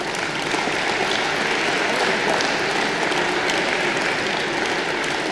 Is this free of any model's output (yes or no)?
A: yes